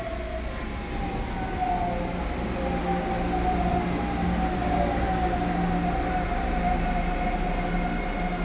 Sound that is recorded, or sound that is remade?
recorded